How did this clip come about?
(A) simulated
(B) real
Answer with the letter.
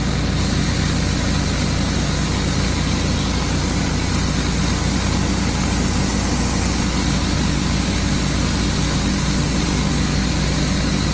B